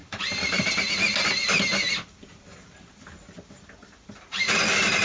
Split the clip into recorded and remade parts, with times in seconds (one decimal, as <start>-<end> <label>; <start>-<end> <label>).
0.0-0.7 remade; 0.7-5.0 recorded